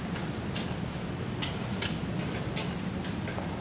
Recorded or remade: recorded